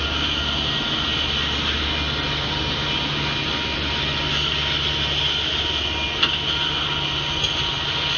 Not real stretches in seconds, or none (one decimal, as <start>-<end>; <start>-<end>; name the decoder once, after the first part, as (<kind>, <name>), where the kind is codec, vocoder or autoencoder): none